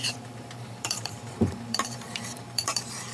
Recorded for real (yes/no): no